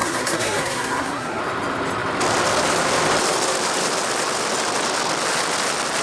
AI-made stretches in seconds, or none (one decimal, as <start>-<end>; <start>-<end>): 0.0-1.4